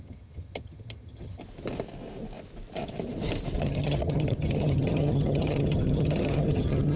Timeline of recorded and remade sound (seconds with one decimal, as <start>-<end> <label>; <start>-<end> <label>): 0.0-1.4 remade; 1.4-3.6 recorded; 3.6-7.0 remade